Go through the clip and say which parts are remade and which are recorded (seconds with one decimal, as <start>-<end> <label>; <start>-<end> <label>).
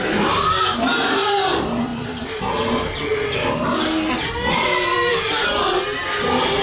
0.0-1.9 recorded; 1.9-2.4 remade; 2.4-6.6 recorded